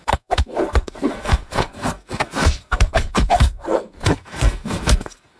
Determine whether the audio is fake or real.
fake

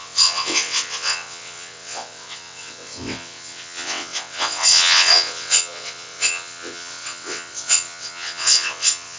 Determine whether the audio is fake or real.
fake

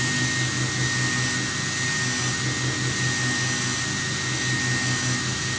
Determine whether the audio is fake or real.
real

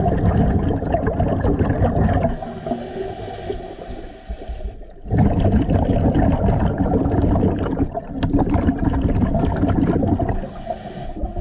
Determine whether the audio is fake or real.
real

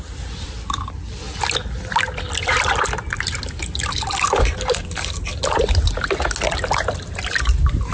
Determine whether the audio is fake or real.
real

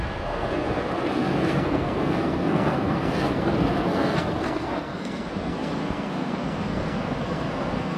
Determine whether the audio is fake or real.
fake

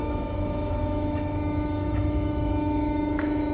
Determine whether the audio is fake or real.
fake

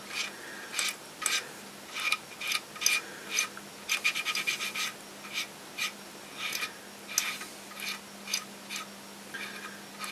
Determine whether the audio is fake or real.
real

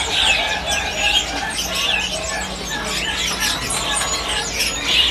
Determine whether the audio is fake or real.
real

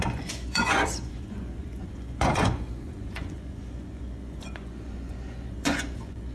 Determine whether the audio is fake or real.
fake